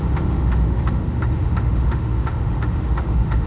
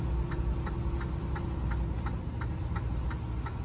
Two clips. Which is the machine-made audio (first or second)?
first